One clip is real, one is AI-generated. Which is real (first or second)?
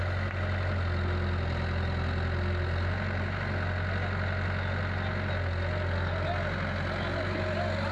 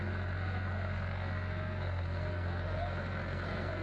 first